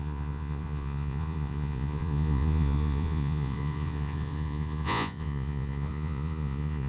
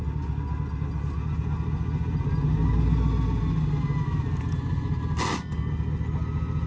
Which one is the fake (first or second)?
first